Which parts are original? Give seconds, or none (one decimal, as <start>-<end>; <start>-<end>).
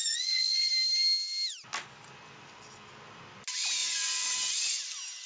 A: 0.7-3.8; 4.8-5.3